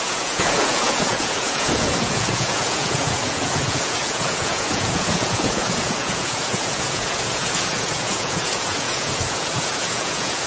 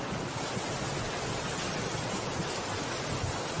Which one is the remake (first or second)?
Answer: first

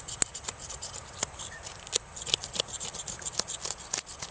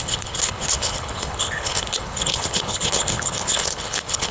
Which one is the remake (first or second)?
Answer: second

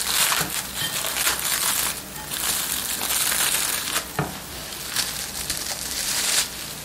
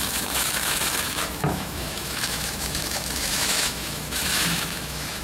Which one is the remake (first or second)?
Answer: second